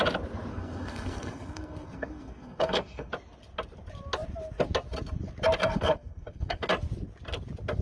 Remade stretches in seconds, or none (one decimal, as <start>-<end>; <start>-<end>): 0.5-3.1; 5.6-6.7